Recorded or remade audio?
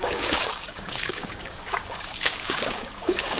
remade